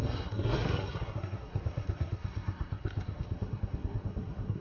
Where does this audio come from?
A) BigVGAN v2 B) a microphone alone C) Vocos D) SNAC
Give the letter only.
D